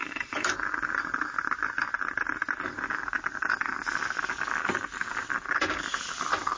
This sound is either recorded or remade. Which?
recorded